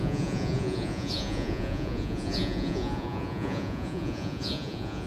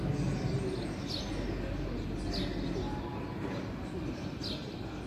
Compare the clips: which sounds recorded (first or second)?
second